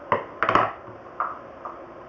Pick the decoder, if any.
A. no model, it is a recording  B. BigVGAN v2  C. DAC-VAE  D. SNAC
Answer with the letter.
A